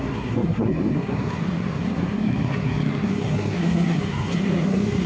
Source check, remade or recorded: remade